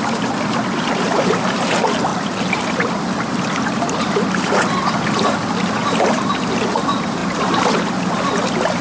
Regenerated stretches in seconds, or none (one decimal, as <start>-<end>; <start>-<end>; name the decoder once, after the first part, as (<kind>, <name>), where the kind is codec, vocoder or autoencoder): 2.1-2.9 (vocoder, BigVGAN v2); 5.8-6.3